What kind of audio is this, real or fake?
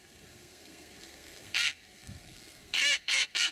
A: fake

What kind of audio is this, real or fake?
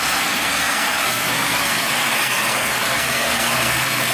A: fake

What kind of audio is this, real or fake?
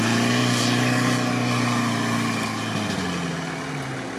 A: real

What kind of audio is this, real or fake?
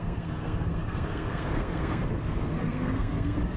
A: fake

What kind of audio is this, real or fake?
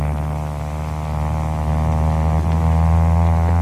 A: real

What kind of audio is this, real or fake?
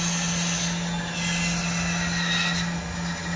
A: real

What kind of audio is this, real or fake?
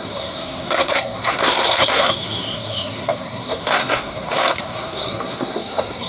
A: fake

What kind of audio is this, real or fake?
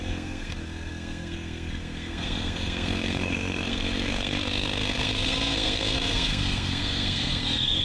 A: fake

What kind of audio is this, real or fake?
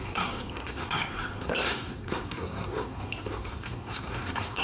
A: fake